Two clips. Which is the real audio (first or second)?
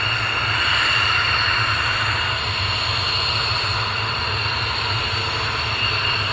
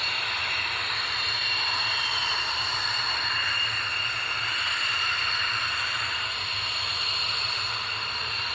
first